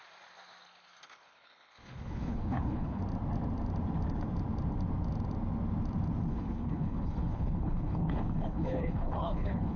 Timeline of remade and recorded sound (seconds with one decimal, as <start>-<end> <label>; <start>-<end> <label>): 0.0-1.0 recorded; 1.0-3.0 remade; 3.0-6.3 recorded; 6.3-9.8 remade